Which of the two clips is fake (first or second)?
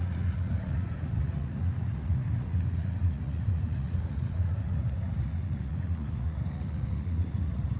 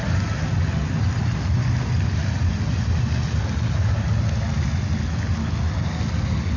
first